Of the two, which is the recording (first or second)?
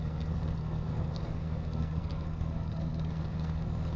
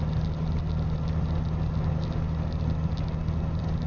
second